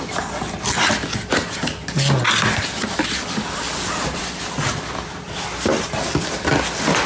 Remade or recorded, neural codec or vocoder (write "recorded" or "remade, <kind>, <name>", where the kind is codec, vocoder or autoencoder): recorded